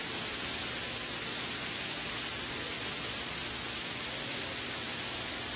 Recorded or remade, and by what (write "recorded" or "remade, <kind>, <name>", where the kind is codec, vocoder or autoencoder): recorded